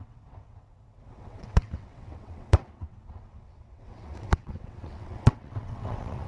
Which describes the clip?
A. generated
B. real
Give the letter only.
A